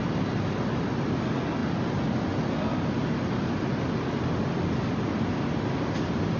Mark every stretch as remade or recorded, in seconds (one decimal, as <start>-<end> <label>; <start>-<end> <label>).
0.0-6.4 recorded